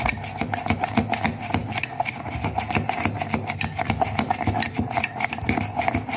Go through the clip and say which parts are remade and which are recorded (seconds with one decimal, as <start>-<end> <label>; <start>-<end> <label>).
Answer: 0.0-6.2 recorded